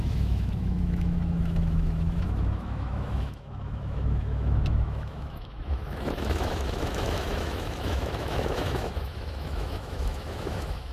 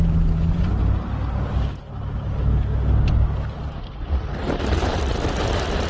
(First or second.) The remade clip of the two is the first